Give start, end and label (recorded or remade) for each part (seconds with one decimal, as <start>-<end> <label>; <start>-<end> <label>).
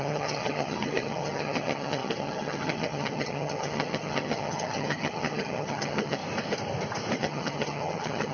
0.0-6.2 remade; 6.2-7.2 recorded; 7.2-8.3 remade